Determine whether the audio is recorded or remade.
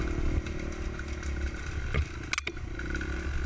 recorded